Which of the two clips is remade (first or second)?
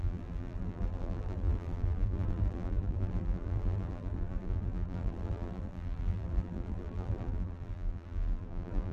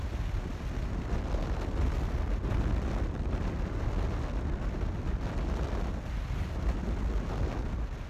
first